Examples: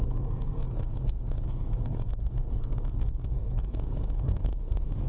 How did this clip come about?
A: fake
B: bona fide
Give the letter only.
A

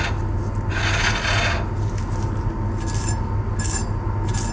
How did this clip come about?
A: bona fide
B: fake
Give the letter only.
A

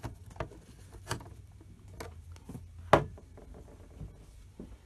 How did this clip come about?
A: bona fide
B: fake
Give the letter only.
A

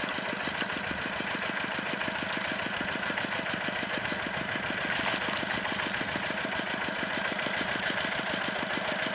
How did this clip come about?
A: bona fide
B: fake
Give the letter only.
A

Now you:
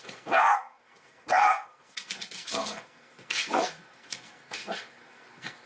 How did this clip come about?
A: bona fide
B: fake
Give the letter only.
B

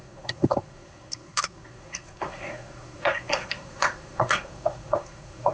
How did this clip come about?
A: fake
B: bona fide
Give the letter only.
A